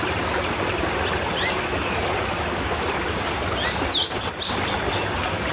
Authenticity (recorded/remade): recorded